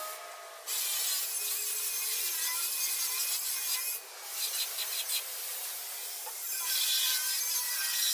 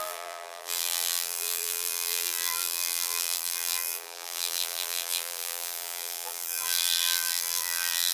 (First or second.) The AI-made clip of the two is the second